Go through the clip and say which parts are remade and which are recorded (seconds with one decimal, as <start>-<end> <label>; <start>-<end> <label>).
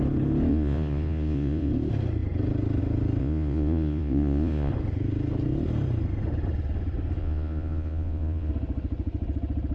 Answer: 0.0-0.5 recorded; 0.5-1.7 remade; 1.7-3.2 recorded; 3.2-4.7 remade; 4.7-7.2 recorded; 7.2-8.5 remade; 8.5-9.7 recorded